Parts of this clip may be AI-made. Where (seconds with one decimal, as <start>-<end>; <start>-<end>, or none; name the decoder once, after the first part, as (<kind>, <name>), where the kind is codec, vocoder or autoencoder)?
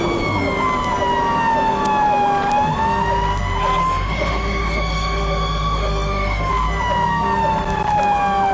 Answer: 3.8-6.5 (autoencoder, DAC-VAE)